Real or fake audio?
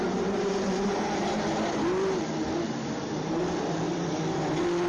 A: fake